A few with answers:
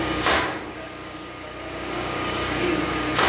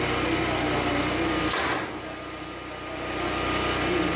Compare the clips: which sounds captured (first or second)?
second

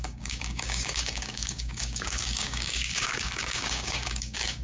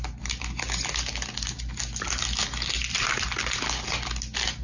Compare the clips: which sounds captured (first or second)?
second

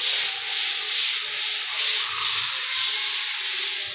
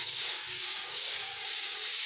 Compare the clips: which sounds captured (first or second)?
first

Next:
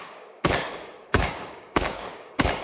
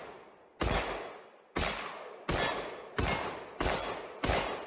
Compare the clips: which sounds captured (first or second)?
second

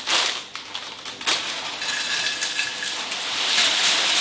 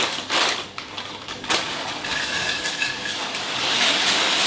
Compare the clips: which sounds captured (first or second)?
first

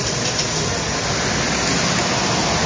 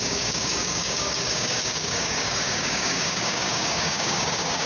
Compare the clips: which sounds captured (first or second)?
first